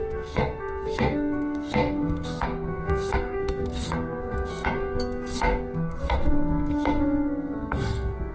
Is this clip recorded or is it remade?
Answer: remade